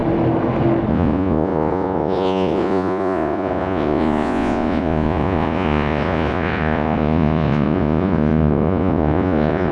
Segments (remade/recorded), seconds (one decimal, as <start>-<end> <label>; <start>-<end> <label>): 0.0-0.9 recorded; 0.9-9.7 remade